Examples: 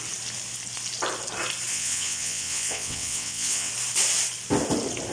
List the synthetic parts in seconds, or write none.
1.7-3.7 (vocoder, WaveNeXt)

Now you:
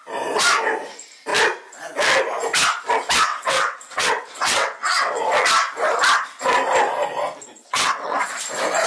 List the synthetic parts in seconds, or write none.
3.3-5.2 (vocoder, WaveNeXt); 7.6-8.2

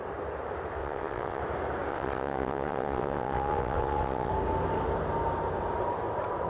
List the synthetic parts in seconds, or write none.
0.8-1.4 (vocoder, WaveNeXt); 1.9-4.3

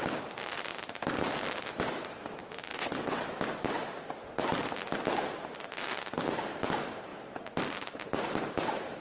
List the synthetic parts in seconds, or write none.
2.7-3.2 (vocoder, WaveNeXt)

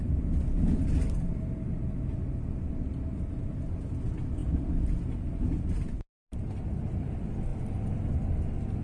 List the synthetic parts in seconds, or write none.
none

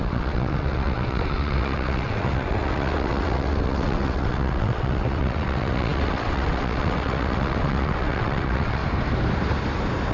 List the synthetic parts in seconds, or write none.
0.0-8.8 (vocoder, WaveNeXt)

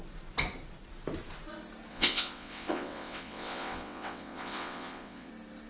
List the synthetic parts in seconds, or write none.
1.9-5.3 (vocoder, WaveNeXt)